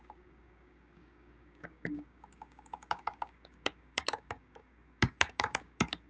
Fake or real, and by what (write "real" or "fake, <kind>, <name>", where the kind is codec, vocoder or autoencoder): fake, codec, DAC